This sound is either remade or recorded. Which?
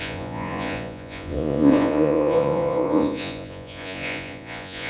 remade